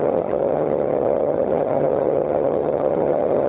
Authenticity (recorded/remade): remade